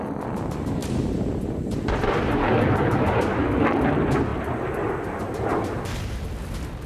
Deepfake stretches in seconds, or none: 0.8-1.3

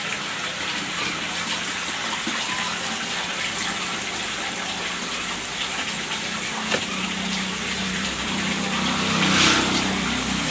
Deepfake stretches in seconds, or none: 0.5-1.1; 6.9-8.1

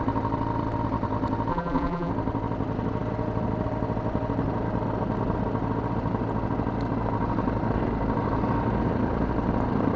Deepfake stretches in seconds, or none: 1.5-2.1

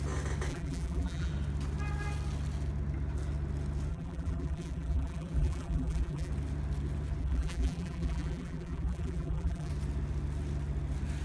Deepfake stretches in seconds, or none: 0.5-1.3; 3.9-6.3; 7.2-9.7

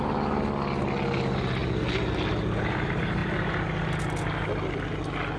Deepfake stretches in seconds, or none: none

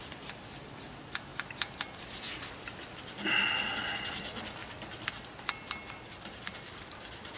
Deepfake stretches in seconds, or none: 0.0-1.3; 4.1-4.6; 7.0-7.4